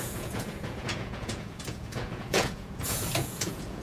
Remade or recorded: remade